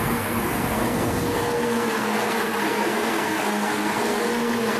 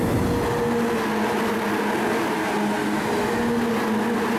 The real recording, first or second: second